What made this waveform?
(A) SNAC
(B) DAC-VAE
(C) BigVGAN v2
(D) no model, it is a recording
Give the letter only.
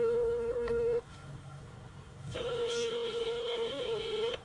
A